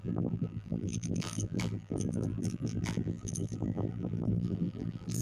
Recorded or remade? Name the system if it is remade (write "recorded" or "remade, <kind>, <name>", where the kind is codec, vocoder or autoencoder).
remade, vocoder, BigVGAN v2